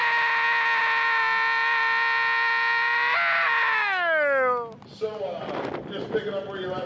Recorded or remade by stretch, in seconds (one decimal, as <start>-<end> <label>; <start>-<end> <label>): 0.0-6.9 recorded